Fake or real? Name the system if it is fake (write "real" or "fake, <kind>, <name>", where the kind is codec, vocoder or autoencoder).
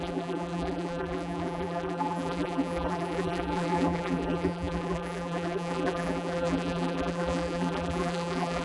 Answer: fake, vocoder, BigVGAN v2